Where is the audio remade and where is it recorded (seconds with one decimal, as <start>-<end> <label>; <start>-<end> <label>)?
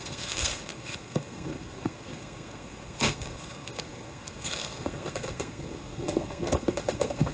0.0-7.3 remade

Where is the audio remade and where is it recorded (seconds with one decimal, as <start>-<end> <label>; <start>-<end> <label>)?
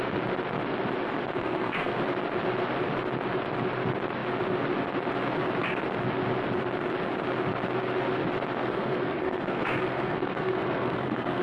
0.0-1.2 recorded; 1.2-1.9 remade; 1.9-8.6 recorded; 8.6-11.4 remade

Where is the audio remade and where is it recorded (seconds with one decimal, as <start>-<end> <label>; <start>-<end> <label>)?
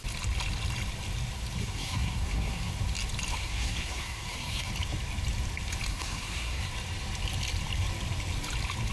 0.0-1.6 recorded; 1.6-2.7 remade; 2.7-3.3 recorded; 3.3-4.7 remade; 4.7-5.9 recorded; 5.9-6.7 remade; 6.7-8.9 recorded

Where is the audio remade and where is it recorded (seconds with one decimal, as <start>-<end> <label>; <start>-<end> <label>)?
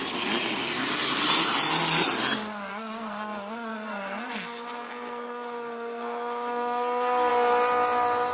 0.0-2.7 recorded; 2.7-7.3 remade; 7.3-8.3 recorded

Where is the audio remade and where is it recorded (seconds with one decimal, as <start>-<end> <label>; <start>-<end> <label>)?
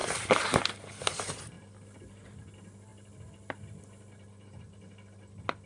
0.0-5.7 recorded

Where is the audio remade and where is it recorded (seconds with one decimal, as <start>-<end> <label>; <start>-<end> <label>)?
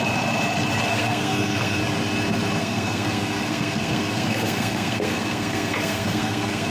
0.0-0.9 recorded; 0.9-1.8 remade; 1.8-2.6 recorded; 2.6-6.7 remade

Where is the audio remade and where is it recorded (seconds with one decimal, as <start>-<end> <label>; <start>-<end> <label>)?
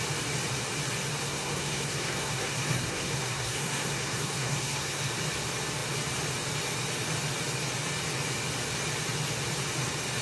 0.0-1.2 recorded; 1.2-5.1 remade; 5.1-10.2 recorded